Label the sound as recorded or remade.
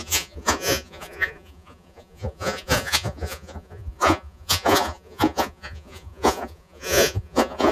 remade